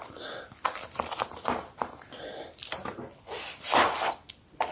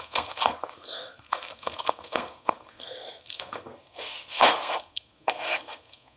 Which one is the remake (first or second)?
second